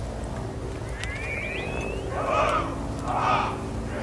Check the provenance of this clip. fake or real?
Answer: real